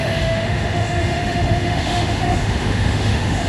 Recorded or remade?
remade